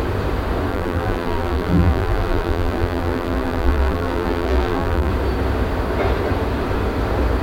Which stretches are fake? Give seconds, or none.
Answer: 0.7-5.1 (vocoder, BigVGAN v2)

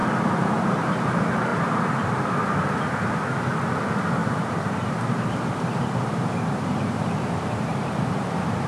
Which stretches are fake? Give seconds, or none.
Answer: 4.2-8.1 (vocoder, BigVGAN v2)

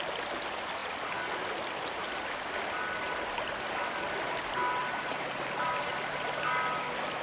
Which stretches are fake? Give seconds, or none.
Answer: 4.8-5.9 (vocoder, BigVGAN v2)

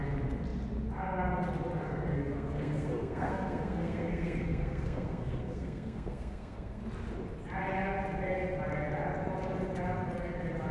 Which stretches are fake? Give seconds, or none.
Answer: 1.9-6.8 (codec, SNAC)

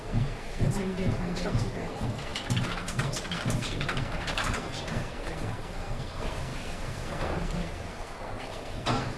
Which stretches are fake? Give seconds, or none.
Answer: 0.0-9.2 (codec, SNAC)

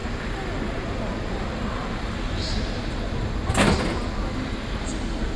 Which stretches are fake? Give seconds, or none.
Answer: none

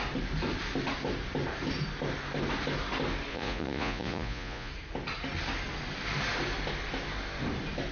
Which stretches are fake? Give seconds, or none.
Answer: 3.3-4.7 (vocoder, Vocos)